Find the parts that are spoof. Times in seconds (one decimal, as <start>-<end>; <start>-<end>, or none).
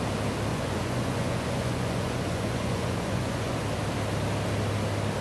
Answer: 0.5-3.6